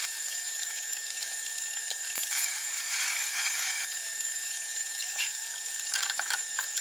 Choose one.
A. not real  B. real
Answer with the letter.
A